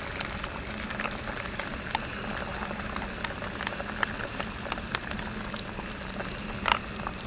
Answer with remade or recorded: recorded